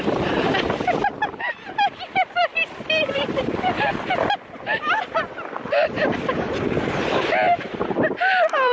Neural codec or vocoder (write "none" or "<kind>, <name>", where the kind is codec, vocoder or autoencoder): vocoder, BigVGAN v2